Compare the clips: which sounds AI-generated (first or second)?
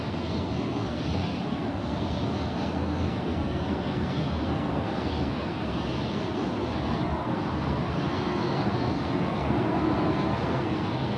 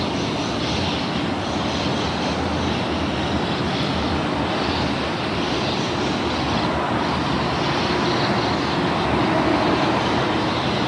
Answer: first